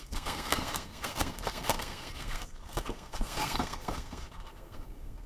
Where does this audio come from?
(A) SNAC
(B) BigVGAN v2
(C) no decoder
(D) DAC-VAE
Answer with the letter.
A